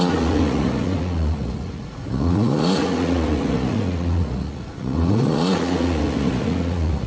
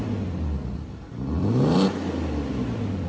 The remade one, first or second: first